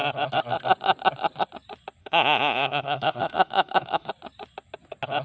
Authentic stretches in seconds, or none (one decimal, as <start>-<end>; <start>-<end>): 0.0-2.0; 4.1-5.2